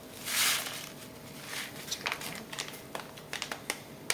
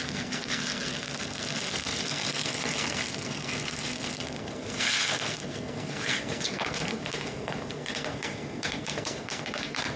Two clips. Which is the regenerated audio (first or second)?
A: second